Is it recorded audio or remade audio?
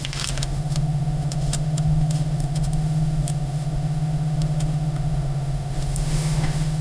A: remade